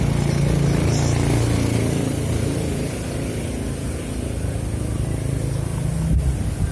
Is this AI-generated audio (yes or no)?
no